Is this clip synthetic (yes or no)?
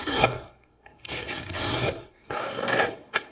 yes